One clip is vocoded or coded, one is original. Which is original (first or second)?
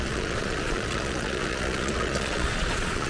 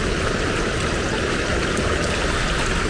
second